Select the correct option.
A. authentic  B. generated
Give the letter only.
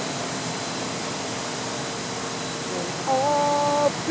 A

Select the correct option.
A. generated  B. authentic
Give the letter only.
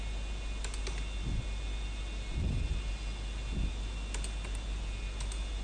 B